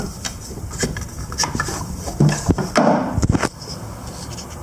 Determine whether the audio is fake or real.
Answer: real